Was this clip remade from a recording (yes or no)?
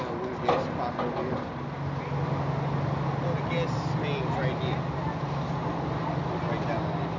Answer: no